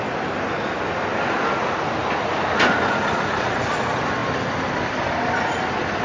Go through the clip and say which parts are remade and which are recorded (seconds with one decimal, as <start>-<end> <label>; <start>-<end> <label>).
0.0-1.1 recorded; 1.1-3.7 remade; 3.7-4.2 recorded; 4.2-6.0 remade

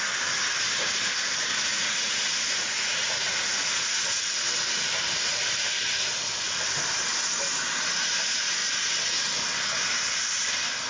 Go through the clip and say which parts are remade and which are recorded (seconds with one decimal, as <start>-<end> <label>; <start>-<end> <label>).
0.0-1.5 recorded; 1.5-4.4 remade; 4.4-10.9 recorded

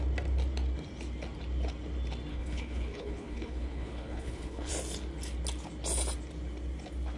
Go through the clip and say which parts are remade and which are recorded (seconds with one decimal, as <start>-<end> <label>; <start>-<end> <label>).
0.0-2.3 recorded; 2.3-4.7 remade; 4.7-7.2 recorded

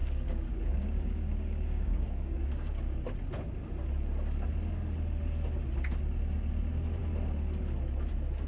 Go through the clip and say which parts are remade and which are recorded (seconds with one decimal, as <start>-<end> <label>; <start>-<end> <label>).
0.0-2.7 remade; 2.7-8.5 recorded